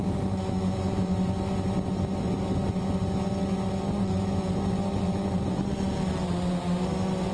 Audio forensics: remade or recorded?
recorded